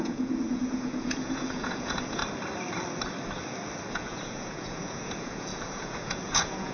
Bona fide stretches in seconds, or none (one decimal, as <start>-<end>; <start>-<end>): 2.2-3.9